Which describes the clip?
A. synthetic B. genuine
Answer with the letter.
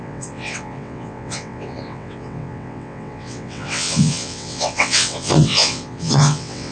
A